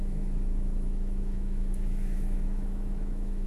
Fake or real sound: fake